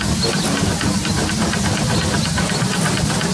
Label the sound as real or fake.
real